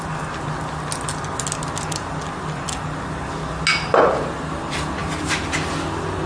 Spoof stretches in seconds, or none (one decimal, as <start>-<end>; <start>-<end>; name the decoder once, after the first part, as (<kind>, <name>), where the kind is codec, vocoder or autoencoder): none